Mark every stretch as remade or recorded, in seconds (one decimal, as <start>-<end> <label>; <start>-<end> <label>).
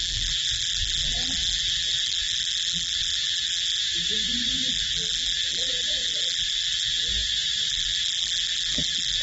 0.0-3.8 remade; 3.8-4.7 recorded; 4.7-7.1 remade; 7.1-7.7 recorded; 7.7-9.2 remade